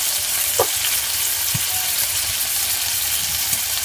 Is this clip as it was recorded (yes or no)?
yes